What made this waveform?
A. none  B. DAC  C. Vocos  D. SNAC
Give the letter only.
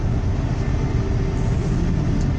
A